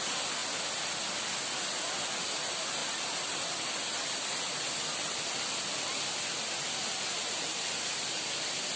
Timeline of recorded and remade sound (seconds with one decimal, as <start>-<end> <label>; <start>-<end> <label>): 0.0-8.8 recorded